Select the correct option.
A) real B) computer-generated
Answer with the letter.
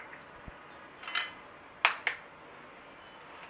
A